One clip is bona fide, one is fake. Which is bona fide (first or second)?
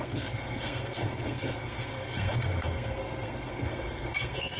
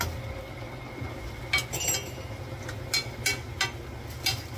second